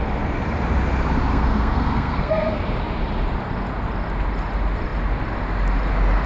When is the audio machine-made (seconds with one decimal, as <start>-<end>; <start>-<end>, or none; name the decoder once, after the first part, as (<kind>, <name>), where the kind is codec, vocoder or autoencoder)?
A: 1.3-2.6 (codec, SNAC)